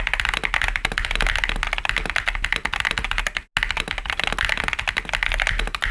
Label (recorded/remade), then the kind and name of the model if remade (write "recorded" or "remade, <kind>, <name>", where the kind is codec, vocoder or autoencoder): recorded